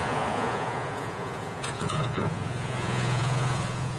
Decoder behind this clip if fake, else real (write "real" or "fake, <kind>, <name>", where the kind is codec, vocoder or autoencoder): fake, vocoder, Vocos